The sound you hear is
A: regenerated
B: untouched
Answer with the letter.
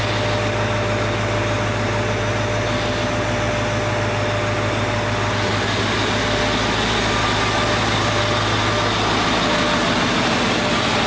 B